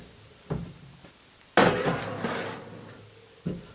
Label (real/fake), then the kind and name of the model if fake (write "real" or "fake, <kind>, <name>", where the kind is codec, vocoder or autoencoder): real